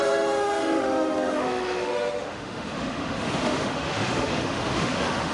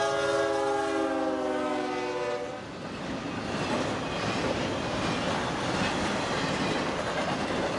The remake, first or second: first